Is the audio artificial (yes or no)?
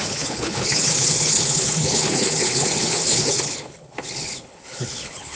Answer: yes